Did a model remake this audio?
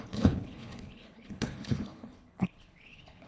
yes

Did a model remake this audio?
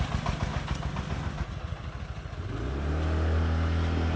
no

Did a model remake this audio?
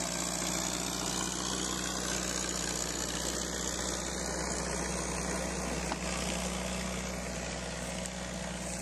no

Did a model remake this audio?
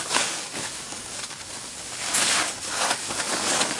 yes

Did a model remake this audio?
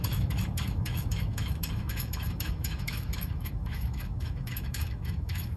yes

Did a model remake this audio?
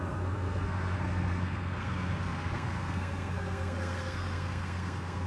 yes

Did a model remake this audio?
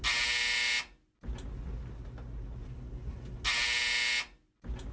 no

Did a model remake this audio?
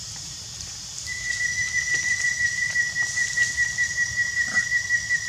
no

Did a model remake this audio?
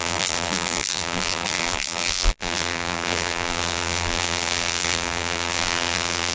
yes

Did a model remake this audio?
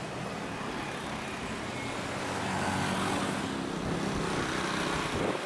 no